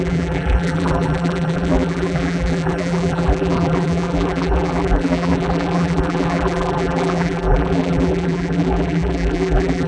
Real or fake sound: fake